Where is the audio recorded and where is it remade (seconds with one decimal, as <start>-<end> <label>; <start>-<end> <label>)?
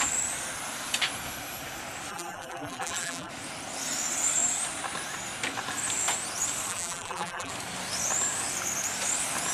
0.0-2.1 recorded; 2.1-3.3 remade; 3.3-6.7 recorded; 6.7-7.5 remade; 7.5-9.5 recorded